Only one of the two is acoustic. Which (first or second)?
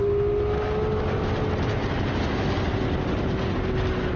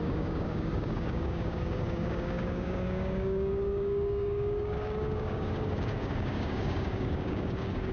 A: first